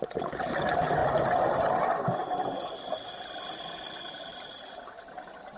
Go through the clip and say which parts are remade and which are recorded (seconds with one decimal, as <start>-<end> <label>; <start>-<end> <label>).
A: 0.0-5.6 recorded